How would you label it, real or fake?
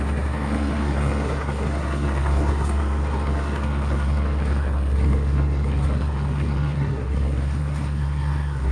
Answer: fake